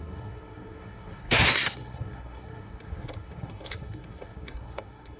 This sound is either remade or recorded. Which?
remade